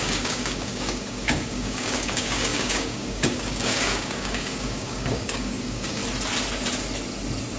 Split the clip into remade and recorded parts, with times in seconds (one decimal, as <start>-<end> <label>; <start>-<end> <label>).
0.0-6.0 remade; 6.0-7.6 recorded